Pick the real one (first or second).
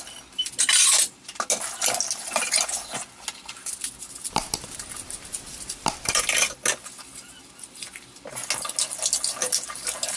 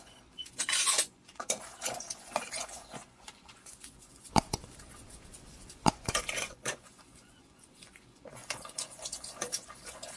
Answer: first